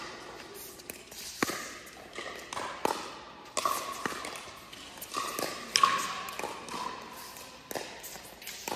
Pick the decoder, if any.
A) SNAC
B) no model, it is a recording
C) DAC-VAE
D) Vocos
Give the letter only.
B